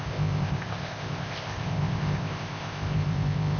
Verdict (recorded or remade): remade